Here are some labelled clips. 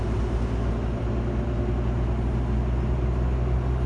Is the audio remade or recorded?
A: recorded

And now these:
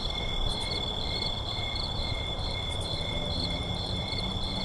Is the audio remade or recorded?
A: remade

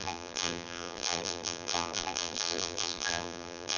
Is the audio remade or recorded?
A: remade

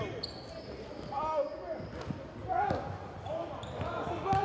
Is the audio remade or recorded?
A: recorded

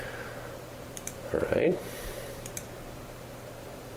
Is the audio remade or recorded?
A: remade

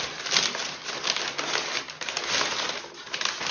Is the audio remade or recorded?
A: recorded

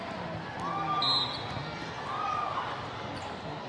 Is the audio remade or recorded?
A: recorded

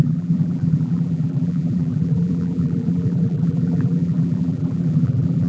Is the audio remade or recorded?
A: remade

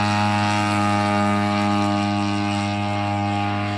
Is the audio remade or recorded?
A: recorded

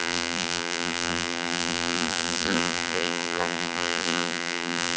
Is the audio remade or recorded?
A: remade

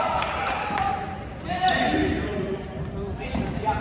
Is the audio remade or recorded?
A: remade